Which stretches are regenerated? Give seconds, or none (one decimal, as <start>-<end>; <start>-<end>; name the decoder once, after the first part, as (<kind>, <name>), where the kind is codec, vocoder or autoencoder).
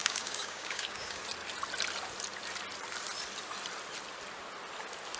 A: 0.0-1.2 (codec, DAC)